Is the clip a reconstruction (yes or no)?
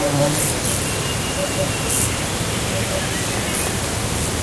no